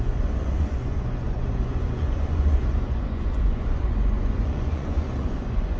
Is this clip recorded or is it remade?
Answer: remade